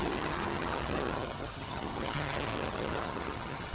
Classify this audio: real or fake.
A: fake